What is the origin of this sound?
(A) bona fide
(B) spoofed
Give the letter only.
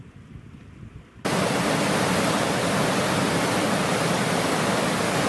A